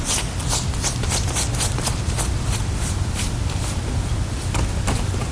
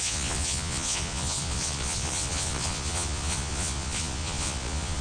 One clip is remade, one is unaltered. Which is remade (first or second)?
second